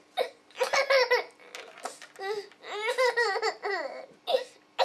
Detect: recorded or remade recorded